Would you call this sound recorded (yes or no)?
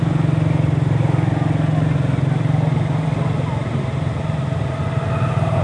yes